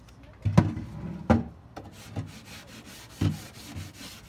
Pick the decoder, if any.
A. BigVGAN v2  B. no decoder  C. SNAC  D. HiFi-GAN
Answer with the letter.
B